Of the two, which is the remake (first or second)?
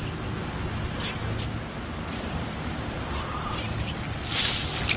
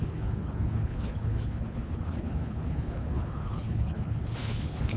second